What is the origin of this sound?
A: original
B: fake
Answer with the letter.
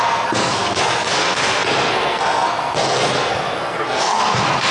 B